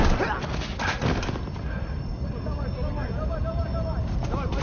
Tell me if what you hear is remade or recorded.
recorded